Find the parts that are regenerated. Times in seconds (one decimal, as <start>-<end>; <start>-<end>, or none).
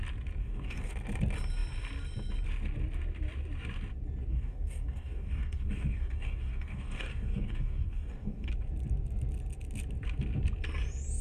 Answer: 0.4-0.9; 4.3-8.5